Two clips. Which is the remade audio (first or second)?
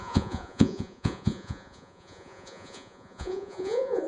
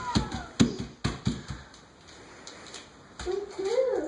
first